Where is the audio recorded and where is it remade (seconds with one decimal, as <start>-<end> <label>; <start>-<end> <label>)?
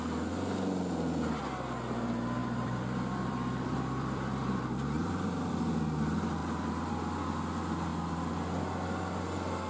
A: 0.0-2.4 recorded; 2.4-5.5 remade; 5.5-6.4 recorded; 6.4-6.9 remade; 6.9-9.7 recorded